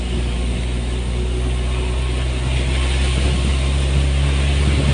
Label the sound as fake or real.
real